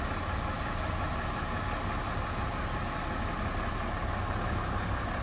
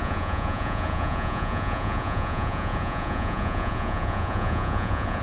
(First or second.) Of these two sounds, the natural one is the first